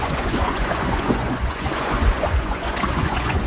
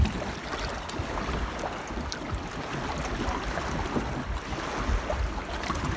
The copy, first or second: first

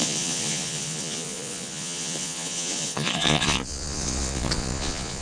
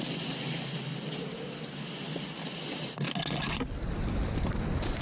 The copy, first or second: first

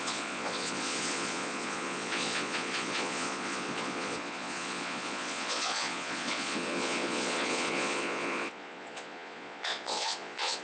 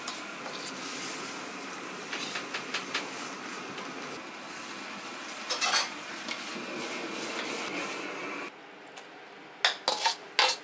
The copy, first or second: first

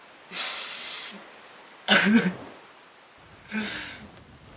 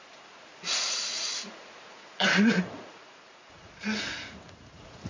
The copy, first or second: second